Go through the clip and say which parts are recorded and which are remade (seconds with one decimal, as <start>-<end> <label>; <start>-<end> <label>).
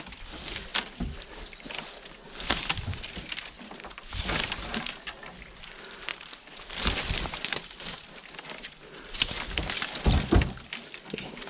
0.0-6.1 recorded; 6.1-9.0 remade; 9.0-11.5 recorded